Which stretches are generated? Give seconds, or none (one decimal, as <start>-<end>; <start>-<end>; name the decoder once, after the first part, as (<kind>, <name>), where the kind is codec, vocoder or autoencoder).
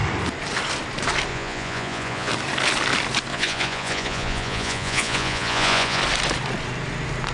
1.3-2.3 (vocoder, Vocos); 3.3-6.0